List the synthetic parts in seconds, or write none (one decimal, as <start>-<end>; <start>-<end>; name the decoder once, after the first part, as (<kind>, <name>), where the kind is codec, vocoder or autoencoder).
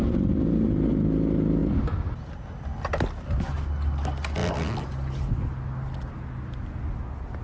none